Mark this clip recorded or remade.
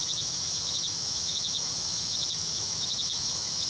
remade